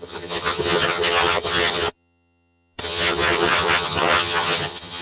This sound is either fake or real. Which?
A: fake